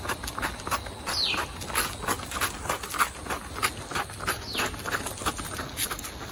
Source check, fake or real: real